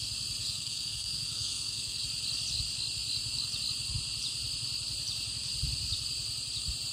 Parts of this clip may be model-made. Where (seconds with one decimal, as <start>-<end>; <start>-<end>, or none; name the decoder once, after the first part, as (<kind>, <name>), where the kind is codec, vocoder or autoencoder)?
0.4-2.0 (codec, SNAC)